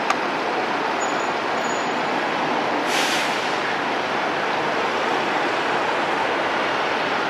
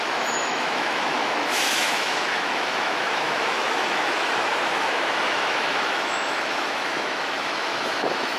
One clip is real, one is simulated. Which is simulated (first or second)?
second